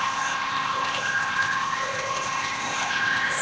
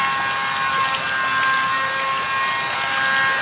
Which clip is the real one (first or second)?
second